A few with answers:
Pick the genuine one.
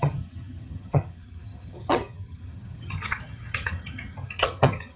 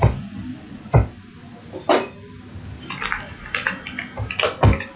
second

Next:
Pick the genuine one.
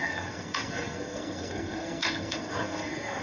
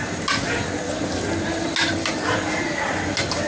second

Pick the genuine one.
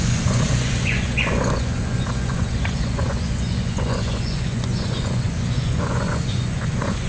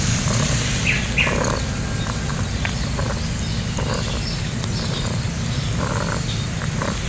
second